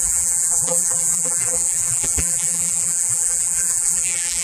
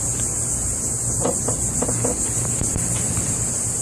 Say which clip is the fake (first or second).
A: first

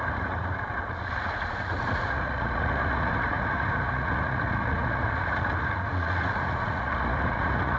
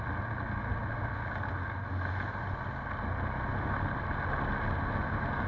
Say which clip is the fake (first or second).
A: first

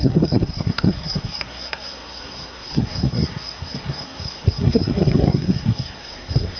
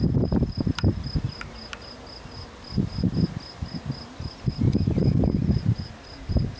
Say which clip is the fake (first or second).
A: first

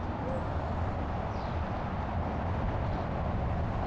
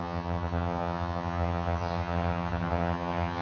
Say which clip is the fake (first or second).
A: second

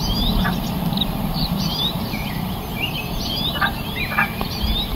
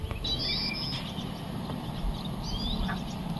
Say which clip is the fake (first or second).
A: first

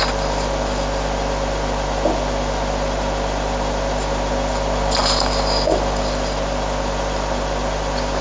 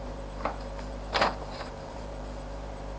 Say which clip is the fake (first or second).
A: second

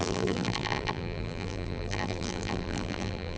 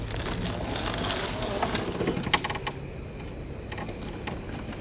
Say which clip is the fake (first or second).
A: first